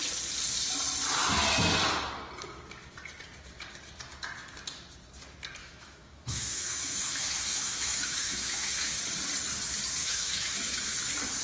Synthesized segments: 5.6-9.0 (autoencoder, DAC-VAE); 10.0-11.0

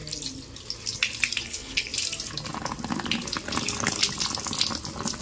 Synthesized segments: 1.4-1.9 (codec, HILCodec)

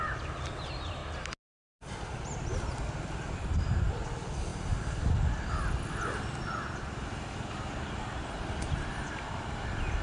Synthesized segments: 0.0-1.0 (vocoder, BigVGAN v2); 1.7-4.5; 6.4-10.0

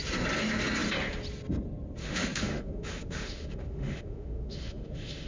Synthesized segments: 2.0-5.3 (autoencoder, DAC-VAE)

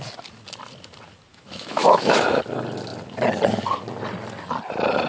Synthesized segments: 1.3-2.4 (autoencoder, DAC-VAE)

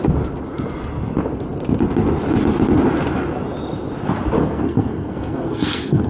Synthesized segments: 4.4-6.1 (codec, SNAC)

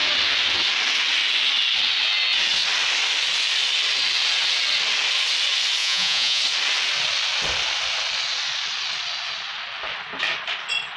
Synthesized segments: 5.8-6.4 (vocoder, Vocos)

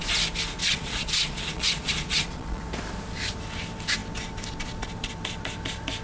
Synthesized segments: 0.6-2.6 (vocoder, Vocos)